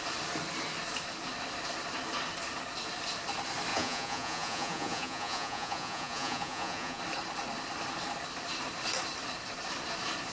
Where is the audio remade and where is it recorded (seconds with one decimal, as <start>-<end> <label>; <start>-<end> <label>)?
0.0-3.7 recorded; 3.7-7.0 remade; 7.0-10.3 recorded